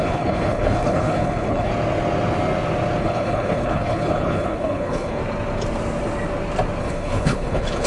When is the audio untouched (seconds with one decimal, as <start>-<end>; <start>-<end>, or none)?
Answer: 1.7-3.0; 5.2-6.8